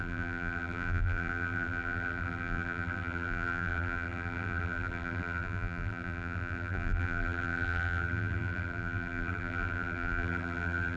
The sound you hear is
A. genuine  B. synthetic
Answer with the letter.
B